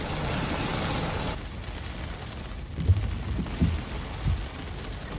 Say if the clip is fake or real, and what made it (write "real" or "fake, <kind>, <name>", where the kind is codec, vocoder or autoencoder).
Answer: real